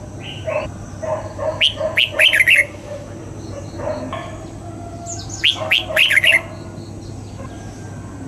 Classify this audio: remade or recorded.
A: recorded